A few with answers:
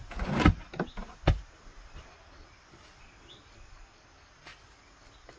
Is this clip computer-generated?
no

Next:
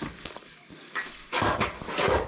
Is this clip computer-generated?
yes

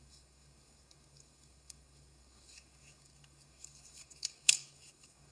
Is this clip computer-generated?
yes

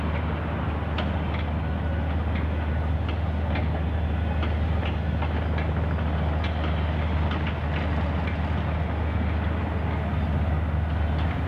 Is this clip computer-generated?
no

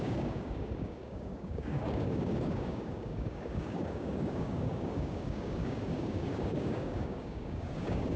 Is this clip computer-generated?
yes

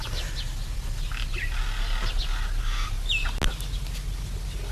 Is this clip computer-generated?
no